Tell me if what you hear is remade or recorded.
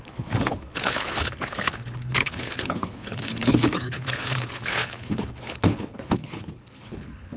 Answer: remade